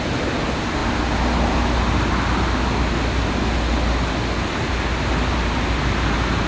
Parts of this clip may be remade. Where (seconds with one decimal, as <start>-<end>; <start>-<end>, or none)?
none